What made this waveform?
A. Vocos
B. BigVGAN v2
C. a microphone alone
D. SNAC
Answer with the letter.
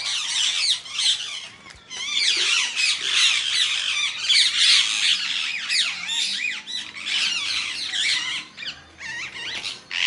C